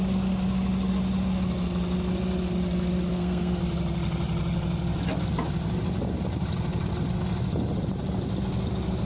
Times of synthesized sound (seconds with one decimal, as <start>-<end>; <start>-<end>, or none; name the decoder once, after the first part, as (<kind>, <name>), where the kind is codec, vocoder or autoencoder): 3.1-3.6 (codec, SNAC)